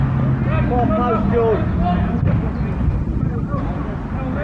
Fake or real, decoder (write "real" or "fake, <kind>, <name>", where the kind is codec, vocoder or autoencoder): real